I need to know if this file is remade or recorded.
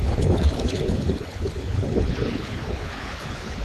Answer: remade